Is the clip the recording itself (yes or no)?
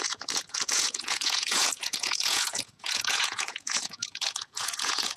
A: no